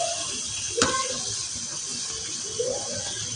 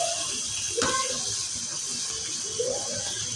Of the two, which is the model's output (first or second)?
first